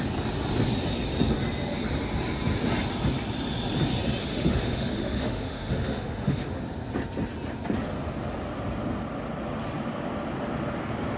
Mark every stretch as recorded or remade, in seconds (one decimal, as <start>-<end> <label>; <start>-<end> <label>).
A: 0.0-4.2 recorded; 4.2-6.6 remade; 6.6-11.2 recorded